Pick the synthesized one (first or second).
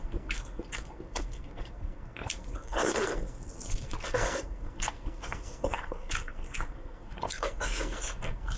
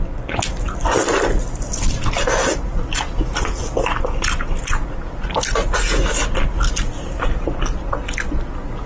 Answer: first